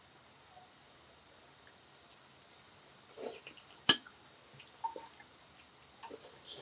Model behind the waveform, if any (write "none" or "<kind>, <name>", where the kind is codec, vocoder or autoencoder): none